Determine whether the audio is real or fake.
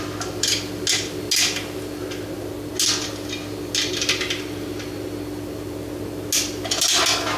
real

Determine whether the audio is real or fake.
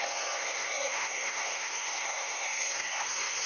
fake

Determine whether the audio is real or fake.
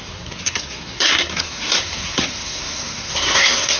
fake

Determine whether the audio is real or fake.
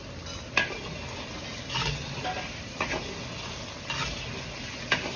real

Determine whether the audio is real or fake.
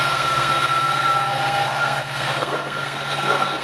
fake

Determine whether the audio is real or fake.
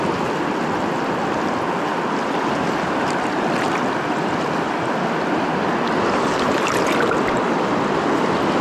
real